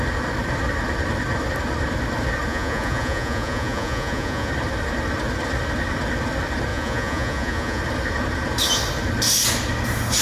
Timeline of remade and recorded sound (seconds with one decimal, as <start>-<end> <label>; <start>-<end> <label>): 0.0-2.5 recorded; 2.5-4.5 remade; 4.5-6.7 recorded; 6.7-7.8 remade; 7.8-10.2 recorded